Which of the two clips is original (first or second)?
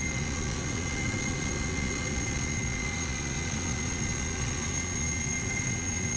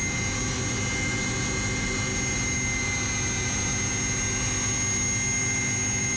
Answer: second